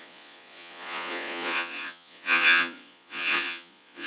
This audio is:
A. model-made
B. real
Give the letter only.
A